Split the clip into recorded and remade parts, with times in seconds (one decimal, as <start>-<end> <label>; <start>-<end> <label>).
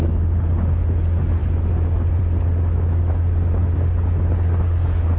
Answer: 0.0-5.2 recorded